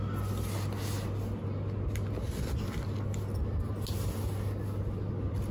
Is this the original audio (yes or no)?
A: yes